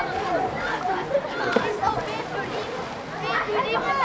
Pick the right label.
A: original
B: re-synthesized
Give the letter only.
A